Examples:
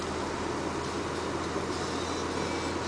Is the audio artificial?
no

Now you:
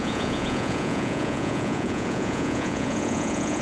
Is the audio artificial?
yes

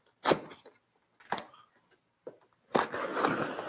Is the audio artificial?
no